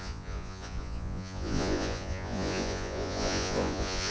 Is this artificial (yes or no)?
yes